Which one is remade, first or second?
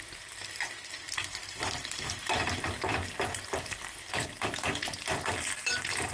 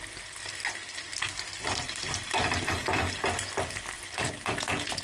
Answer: first